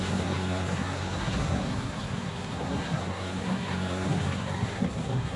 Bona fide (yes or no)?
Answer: no